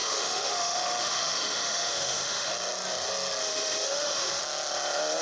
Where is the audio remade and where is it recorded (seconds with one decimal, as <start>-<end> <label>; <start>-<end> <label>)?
0.0-2.5 remade; 2.5-3.4 recorded; 3.4-4.4 remade; 4.4-5.2 recorded

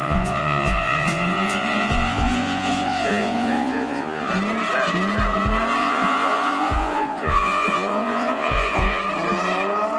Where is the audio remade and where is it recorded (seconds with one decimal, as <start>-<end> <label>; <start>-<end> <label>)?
0.0-4.3 remade; 4.3-5.8 recorded; 5.8-9.0 remade; 9.0-10.0 recorded

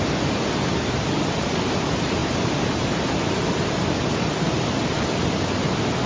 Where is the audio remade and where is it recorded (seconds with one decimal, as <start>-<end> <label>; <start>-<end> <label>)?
0.0-2.2 remade; 2.2-6.1 recorded